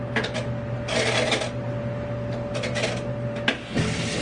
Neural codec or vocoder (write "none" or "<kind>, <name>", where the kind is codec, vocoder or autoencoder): none